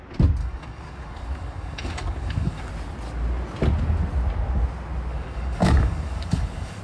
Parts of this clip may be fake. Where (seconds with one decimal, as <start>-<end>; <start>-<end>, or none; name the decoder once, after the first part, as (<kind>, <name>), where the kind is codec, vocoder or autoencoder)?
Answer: 0.4-2.7 (codec, DAC); 5.1-6.8